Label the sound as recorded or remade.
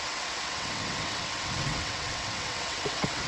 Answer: remade